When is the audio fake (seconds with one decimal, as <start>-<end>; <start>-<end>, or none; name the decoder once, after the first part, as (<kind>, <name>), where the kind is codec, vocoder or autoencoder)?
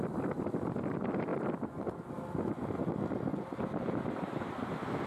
none